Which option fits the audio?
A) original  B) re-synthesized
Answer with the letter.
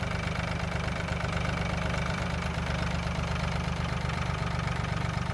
B